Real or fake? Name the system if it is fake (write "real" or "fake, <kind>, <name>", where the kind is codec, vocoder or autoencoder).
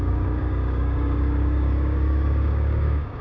fake, codec, DAC